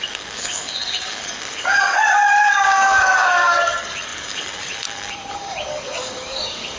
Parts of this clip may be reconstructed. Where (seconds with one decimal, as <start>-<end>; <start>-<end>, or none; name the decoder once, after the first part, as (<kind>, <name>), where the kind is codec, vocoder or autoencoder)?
0.0-6.8 (codec, DAC)